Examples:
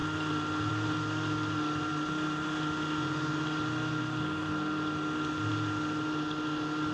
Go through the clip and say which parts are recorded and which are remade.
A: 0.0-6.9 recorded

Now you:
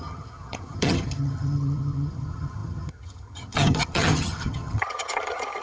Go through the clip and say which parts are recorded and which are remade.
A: 0.0-5.6 remade

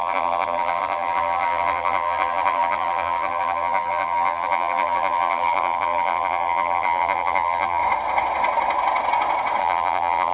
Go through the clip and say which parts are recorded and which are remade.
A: 0.0-7.8 remade; 7.8-9.6 recorded; 9.6-10.3 remade

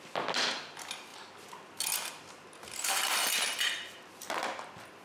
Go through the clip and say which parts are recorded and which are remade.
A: 0.0-5.0 recorded

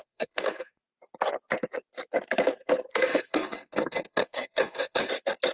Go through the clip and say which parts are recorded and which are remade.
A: 0.0-0.8 remade; 0.8-2.9 recorded; 2.9-5.1 remade; 5.1-5.5 recorded

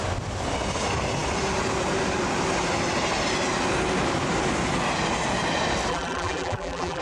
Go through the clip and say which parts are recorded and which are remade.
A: 0.0-5.9 recorded; 5.9-7.0 remade

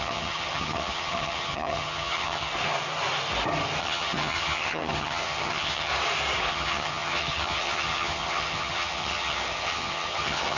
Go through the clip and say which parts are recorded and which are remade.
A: 0.0-2.5 remade; 2.5-3.8 recorded; 3.8-5.9 remade; 5.9-6.5 recorded; 6.5-10.6 remade